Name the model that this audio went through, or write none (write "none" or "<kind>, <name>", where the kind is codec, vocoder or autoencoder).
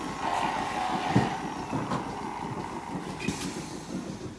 none